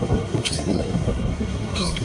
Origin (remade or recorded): remade